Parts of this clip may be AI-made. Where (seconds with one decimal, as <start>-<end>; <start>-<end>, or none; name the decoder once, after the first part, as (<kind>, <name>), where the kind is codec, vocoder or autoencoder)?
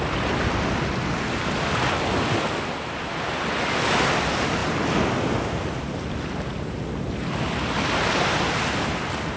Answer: none